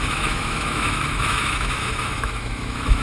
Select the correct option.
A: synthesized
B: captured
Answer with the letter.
A